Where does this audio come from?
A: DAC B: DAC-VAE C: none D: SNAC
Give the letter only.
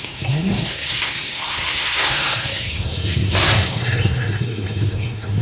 D